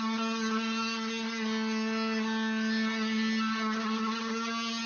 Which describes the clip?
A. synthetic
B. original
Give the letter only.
B